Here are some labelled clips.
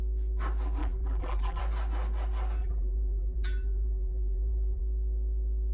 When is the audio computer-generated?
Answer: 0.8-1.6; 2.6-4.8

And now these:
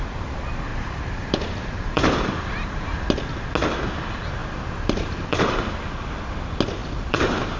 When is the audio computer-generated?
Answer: 0.7-3.2; 4.4-5.5; 6.8-7.6

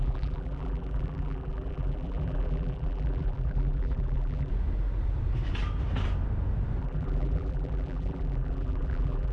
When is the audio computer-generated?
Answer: 0.0-4.5; 6.8-9.3

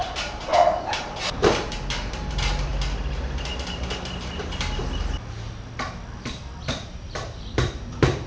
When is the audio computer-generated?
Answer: 0.0-2.7; 4.1-4.8; 6.6-8.3

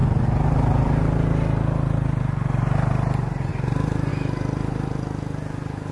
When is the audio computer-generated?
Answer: none

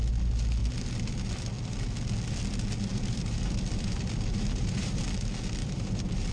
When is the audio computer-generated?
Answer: 2.9-5.0; 5.6-6.3

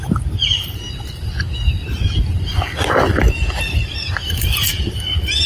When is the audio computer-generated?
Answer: none

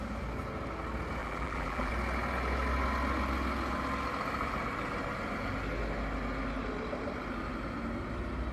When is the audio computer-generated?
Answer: 1.2-1.9